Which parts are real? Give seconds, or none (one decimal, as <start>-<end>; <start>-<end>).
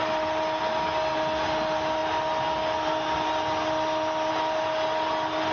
0.0-5.5